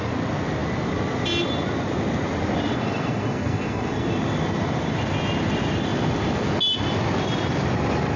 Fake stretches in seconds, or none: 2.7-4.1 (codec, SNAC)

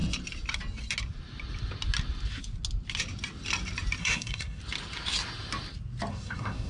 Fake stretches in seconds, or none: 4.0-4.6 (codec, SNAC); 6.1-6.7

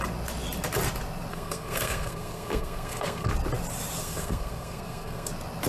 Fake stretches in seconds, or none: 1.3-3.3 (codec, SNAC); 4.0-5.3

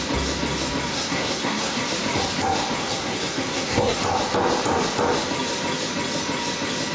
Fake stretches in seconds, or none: 0.9-1.8 (codec, SNAC); 2.8-4.0

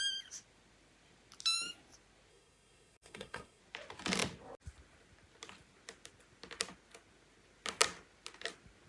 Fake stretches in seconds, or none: 2.3-3.6 (codec, SNAC)